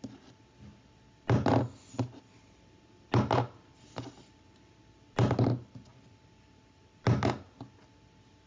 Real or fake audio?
real